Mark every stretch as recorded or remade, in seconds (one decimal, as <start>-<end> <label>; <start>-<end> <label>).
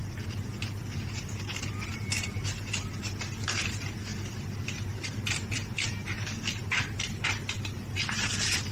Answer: 0.0-8.7 recorded